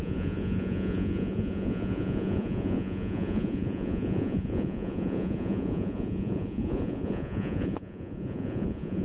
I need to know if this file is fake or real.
fake